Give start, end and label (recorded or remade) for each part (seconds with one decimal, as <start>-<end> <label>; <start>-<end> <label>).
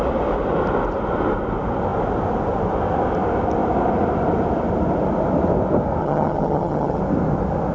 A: 0.0-6.0 recorded; 6.0-7.0 remade; 7.0-7.7 recorded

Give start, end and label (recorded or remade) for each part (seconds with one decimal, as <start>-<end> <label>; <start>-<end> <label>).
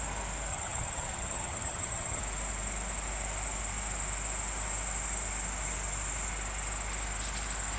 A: 0.0-0.5 recorded; 0.5-2.2 remade; 2.2-7.8 recorded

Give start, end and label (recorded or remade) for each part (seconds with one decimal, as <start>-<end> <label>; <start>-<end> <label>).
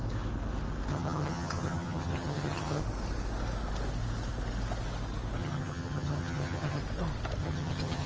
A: 0.0-0.9 recorded; 0.9-2.8 remade; 2.8-5.4 recorded; 5.4-6.8 remade; 6.8-7.4 recorded; 7.4-8.1 remade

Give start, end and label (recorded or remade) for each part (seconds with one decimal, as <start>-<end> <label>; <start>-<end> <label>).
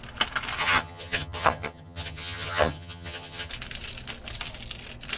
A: 0.0-0.6 recorded; 0.6-3.5 remade; 3.5-5.2 recorded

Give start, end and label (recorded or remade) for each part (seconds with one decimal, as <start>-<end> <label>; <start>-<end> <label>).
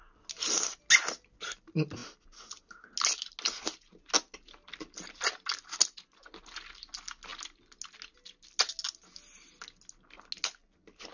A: 0.0-11.1 recorded